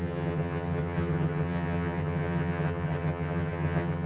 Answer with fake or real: fake